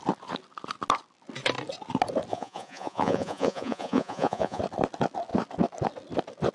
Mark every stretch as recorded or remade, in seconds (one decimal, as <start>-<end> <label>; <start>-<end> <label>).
0.0-2.3 recorded; 2.3-4.6 remade; 4.6-6.5 recorded